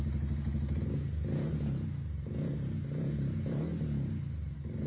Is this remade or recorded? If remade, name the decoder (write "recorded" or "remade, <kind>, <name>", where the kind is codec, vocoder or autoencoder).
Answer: recorded